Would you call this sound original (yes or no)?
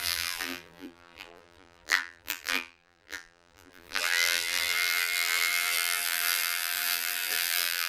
no